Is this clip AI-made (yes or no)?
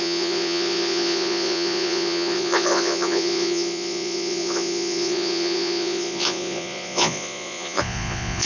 yes